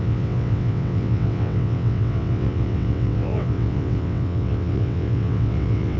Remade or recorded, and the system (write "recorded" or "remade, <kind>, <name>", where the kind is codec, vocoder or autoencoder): remade, vocoder, WaveNeXt